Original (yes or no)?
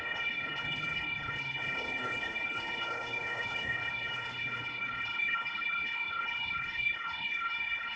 no